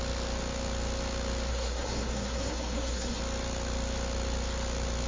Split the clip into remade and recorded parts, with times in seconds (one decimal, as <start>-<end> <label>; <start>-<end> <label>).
0.0-1.5 recorded; 1.5-3.2 remade; 3.2-5.1 recorded